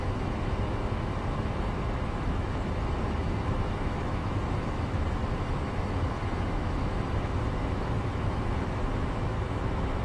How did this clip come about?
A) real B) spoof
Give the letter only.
B